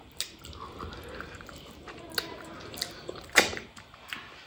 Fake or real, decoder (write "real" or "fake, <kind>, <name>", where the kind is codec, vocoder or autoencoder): real